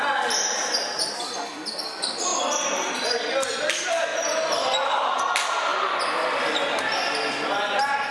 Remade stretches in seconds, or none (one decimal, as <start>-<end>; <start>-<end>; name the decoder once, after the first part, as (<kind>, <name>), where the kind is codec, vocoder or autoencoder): 4.1-4.8 (vocoder, BigVGAN v2)